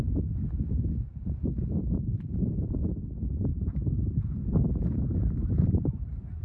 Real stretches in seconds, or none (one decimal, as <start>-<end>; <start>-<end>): 0.0-1.1; 2.9-3.5